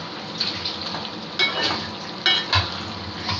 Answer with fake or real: real